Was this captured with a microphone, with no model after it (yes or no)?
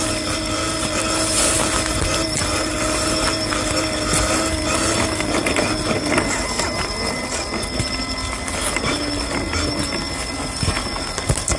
yes